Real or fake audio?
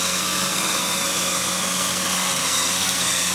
fake